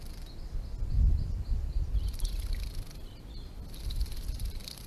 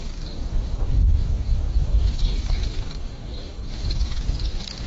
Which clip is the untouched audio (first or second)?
first